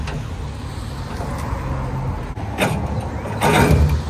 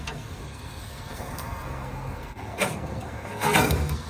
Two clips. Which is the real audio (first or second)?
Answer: first